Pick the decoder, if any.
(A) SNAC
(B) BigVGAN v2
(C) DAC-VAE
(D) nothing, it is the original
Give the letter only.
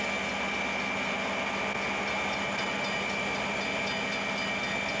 D